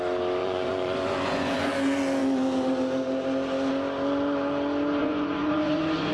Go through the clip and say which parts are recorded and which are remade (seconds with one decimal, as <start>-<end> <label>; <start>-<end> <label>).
0.0-0.4 recorded; 0.4-1.7 remade; 1.7-5.0 recorded; 5.0-6.1 remade